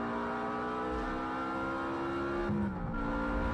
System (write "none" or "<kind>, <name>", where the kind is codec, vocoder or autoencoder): none